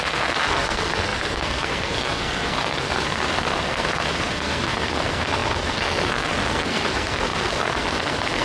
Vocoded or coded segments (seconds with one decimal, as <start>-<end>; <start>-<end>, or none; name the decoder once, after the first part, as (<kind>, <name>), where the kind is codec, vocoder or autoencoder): 0.0-8.4 (codec, SNAC)